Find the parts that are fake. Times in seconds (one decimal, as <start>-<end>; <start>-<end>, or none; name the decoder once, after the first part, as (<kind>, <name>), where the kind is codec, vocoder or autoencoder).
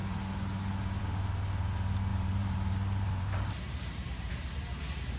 0.0-1.0 (vocoder, BigVGAN v2); 2.1-4.3